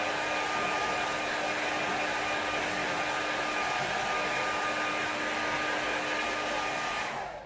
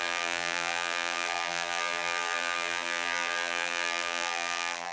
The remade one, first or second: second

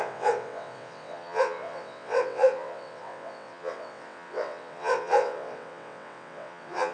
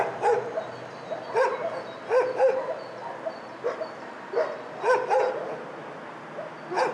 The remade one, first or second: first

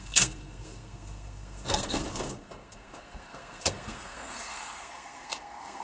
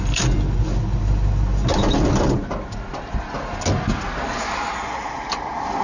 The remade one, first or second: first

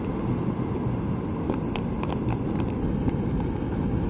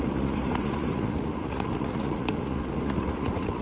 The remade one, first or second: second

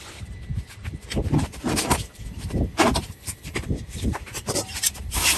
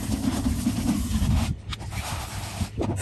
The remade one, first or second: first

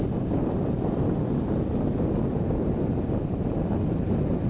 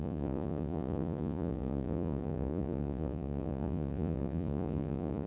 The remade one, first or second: second